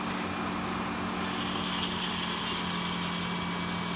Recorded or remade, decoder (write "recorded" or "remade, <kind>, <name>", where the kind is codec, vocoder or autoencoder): recorded